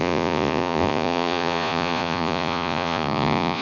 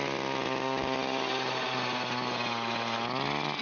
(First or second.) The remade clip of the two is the first